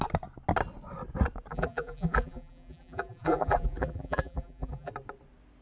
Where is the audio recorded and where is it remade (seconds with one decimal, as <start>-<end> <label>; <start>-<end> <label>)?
0.0-1.5 recorded; 1.5-4.9 remade; 4.9-5.6 recorded